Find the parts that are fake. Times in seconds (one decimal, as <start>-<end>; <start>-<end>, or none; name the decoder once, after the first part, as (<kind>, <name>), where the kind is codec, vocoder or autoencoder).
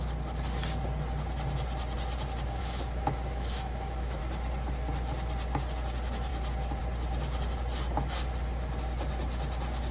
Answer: 2.6-4.2 (autoencoder, DAC-VAE)